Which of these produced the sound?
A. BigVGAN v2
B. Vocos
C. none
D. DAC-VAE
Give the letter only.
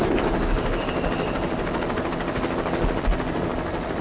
C